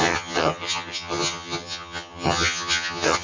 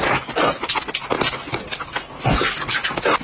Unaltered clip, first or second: second